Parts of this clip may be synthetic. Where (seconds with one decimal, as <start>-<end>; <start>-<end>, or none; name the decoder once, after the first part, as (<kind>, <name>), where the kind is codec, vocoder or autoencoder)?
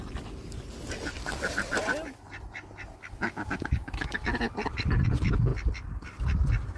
none